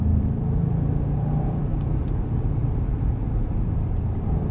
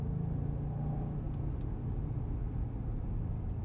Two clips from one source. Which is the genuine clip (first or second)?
second